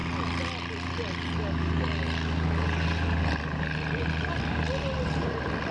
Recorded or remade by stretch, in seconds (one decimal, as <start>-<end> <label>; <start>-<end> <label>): 0.0-5.7 recorded